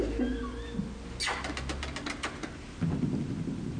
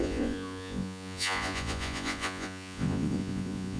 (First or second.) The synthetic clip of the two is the second